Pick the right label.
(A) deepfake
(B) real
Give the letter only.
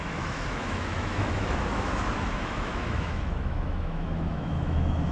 A